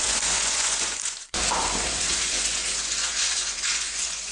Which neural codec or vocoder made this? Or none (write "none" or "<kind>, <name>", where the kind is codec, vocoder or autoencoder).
vocoder, Vocos